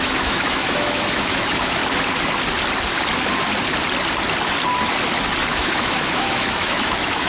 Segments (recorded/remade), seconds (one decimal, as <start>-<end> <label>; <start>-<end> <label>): 0.0-1.8 remade; 1.8-5.4 recorded; 5.4-7.3 remade